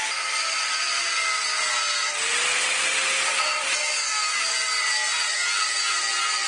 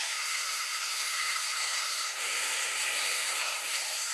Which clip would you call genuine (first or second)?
first